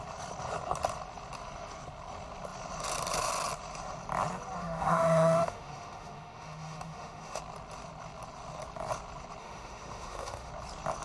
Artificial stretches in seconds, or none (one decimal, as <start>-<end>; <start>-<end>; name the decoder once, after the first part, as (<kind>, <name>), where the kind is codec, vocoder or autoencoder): 4.6-7.4 (autoencoder, DAC-VAE); 9.4-10.5